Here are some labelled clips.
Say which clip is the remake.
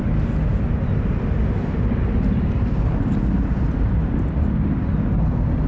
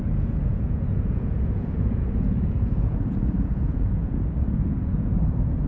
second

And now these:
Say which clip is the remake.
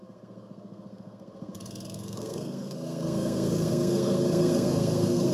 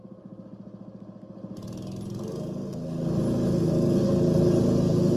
first